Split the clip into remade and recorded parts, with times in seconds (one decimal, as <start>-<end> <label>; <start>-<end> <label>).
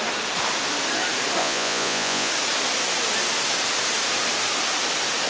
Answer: 0.0-1.4 recorded; 1.4-2.3 remade; 2.3-5.3 recorded